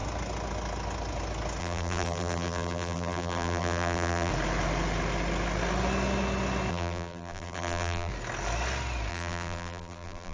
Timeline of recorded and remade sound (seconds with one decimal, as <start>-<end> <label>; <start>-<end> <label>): 0.0-1.6 recorded; 1.6-4.3 remade; 4.3-6.7 recorded; 6.7-8.1 remade; 8.1-9.1 recorded; 9.1-10.3 remade